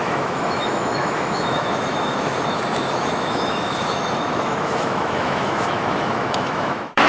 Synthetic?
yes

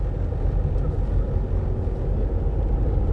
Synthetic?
no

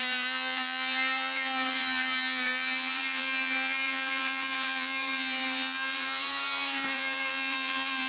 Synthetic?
yes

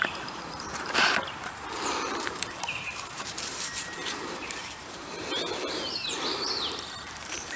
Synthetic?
yes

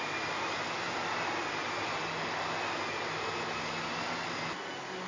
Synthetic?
no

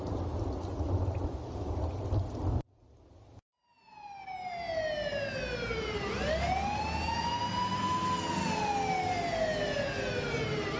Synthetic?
no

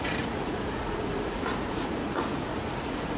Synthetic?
yes